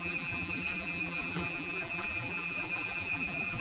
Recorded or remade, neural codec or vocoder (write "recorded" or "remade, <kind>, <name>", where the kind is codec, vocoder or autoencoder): remade, vocoder, BigVGAN v2